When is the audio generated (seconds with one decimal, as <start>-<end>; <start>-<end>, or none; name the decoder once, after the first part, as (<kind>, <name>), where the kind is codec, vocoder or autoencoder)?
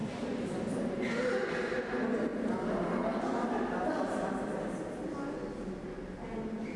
none